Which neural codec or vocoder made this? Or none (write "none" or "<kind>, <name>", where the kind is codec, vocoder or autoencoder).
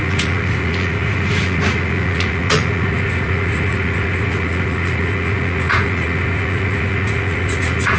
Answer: vocoder, Vocos